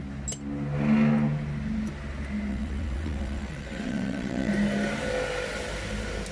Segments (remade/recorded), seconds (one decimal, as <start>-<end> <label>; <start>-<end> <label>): 0.0-2.5 recorded; 2.5-4.5 remade; 4.5-6.3 recorded